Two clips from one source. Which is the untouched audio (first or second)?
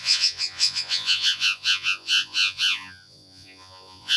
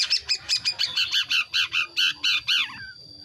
second